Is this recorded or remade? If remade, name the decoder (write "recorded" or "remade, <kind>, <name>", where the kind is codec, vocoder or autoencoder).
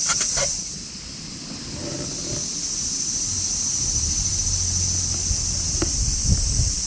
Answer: recorded